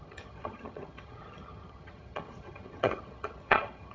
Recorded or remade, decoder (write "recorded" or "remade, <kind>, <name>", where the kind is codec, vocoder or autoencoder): remade, vocoder, HiFi-GAN